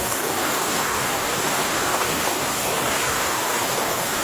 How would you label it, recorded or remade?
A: remade